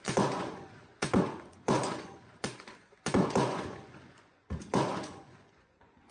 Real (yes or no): no